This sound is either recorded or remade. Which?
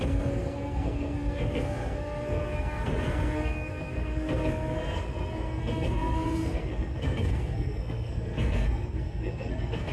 remade